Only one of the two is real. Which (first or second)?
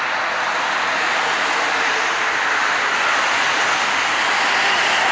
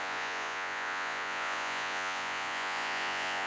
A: first